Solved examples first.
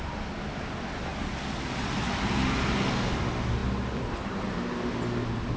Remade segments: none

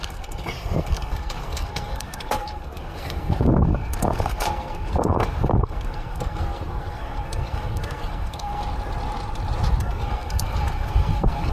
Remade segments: 0.0-8.6 (codec, SNAC); 9.8-11.5

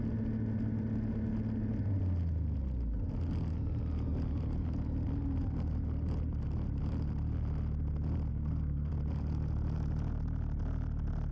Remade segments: 8.3-8.9 (codec, SNAC)

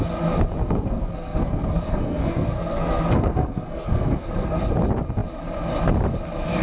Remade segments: 0.6-4.6 (codec, SNAC)

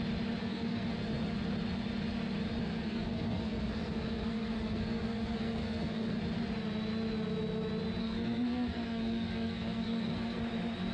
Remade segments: 0.4-0.9 (codec, SNAC); 2.6-6.2; 8.0-10.4

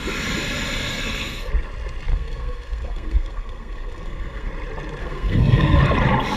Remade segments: 0.9-1.5 (codec, SNAC); 2.1-4.5; 5.0-5.8

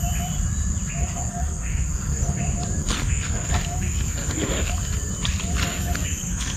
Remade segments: 1.0-2.4 (codec, SNAC); 2.8-4.7; 5.6-6.6

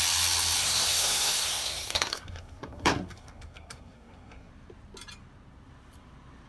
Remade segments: 0.6-4.5 (codec, SNAC)